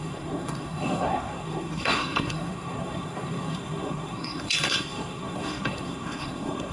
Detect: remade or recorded remade